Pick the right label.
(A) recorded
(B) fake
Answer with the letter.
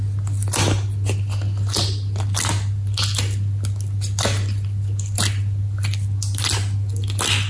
A